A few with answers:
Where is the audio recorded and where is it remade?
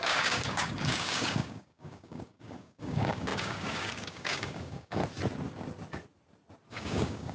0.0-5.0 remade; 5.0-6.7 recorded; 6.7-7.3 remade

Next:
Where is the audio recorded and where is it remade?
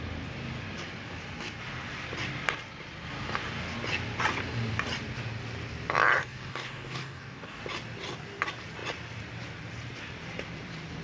0.0-6.2 recorded; 6.2-7.6 remade; 7.6-11.0 recorded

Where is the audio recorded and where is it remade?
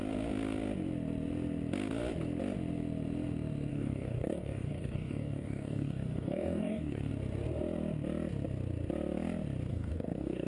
0.0-3.7 recorded; 3.7-7.1 remade; 7.1-9.7 recorded; 9.7-10.5 remade